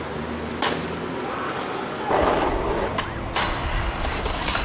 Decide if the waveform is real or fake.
real